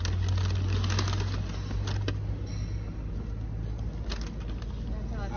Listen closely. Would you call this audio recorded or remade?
recorded